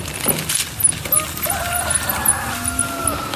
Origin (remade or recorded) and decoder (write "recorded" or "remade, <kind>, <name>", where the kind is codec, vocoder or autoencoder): recorded